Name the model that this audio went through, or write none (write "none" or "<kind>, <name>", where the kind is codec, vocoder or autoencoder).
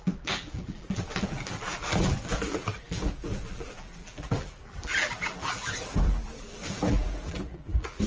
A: vocoder, BigVGAN v2